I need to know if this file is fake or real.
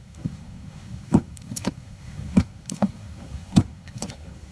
fake